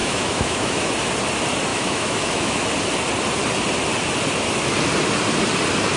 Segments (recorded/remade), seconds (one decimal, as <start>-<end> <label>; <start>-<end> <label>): 0.0-0.9 remade; 0.9-1.7 recorded; 1.7-2.6 remade; 2.6-6.0 recorded